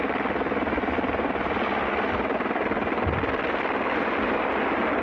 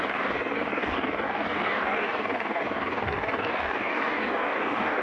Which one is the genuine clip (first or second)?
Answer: first